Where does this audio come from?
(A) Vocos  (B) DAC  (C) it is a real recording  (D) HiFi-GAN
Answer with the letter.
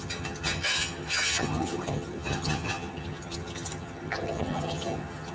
D